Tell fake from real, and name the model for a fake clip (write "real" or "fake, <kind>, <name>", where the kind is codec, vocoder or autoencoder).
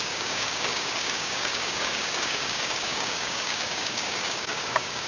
fake, codec, DAC